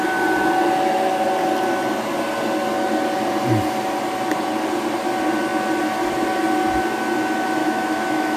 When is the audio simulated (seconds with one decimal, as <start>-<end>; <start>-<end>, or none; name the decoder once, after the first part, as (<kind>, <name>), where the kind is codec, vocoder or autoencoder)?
7.6-8.4 (autoencoder, DAC-VAE)